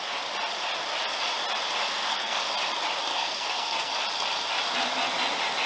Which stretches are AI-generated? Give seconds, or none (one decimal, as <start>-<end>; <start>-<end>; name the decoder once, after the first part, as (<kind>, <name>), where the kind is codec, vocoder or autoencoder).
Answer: 1.9-2.4 (codec, SNAC); 3.1-3.9